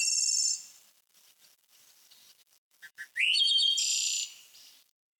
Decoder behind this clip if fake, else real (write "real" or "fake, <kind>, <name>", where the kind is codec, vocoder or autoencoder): fake, vocoder, BigVGAN v2